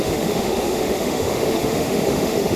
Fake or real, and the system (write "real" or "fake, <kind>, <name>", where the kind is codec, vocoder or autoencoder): fake, autoencoder, DAC-VAE